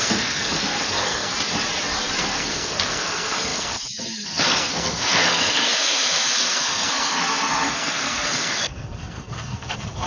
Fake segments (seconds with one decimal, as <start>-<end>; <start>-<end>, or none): 0.0-1.3; 2.2-10.1